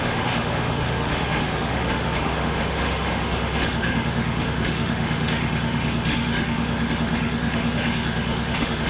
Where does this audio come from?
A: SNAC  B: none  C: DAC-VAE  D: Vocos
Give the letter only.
C